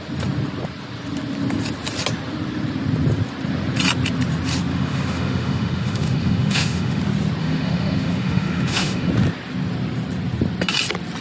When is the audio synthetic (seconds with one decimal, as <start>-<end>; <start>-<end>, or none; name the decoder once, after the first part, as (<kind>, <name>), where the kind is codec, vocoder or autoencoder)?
4.7-7.0 (autoencoder, DAC-VAE); 7.4-9.1